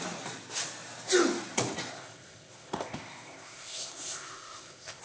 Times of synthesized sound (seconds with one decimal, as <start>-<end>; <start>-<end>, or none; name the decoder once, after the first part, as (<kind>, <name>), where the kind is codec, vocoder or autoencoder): 1.9-5.0 (codec, ZipCodec)